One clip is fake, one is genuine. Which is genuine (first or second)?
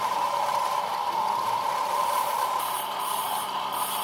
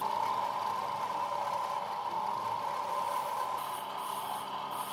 second